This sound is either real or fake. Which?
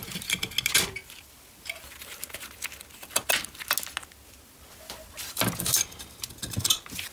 real